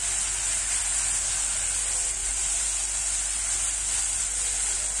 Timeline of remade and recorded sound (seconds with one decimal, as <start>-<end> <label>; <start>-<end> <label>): 0.0-5.0 recorded